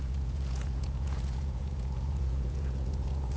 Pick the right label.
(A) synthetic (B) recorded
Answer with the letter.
A